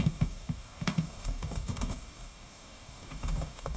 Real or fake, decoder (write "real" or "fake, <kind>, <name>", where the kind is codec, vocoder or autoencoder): fake, codec, DAC